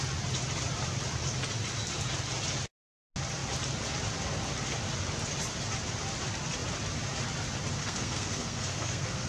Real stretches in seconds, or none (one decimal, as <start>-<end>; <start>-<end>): 0.0-7.8